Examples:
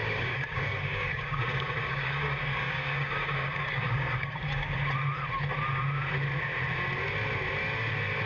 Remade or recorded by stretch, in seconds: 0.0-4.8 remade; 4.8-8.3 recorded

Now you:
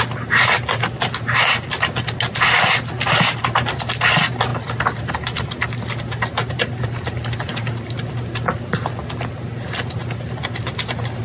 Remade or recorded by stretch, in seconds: 0.0-11.2 recorded

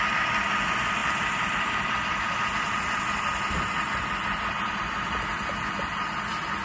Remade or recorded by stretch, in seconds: 0.0-1.0 recorded; 1.0-2.4 remade; 2.4-6.6 recorded

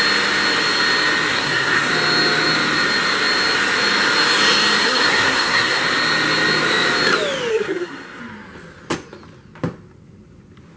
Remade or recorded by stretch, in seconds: 0.0-1.3 recorded; 1.3-1.9 remade; 1.9-4.8 recorded; 4.8-5.8 remade; 5.8-7.5 recorded; 7.5-8.2 remade; 8.2-10.8 recorded

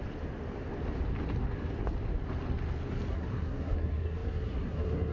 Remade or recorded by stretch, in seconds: 0.0-3.1 recorded; 3.1-5.1 remade

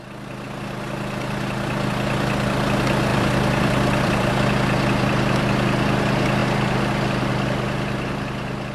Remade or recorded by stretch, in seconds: 0.0-3.1 recorded; 3.1-4.3 remade; 4.3-8.7 recorded

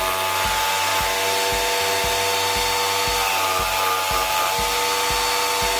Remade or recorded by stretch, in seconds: 0.0-5.8 recorded